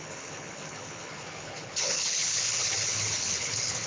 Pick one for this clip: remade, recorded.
remade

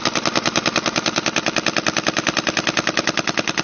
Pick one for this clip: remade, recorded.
recorded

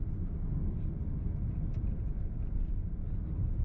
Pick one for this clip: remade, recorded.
recorded